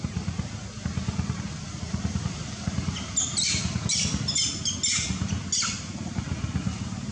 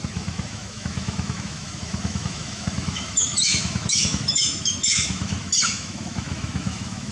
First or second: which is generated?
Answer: second